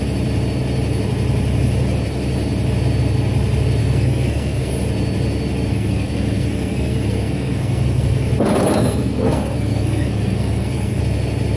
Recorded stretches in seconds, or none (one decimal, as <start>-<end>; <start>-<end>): 0.0-3.8; 4.7-5.7; 8.3-8.8; 11.0-11.6